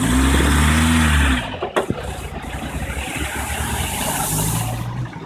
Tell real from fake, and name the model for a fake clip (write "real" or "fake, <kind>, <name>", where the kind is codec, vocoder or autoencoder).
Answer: real